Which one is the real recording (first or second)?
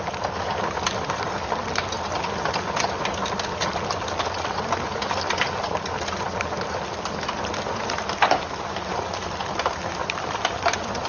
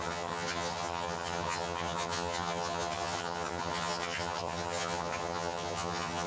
first